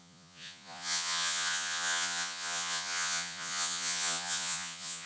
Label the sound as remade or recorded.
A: remade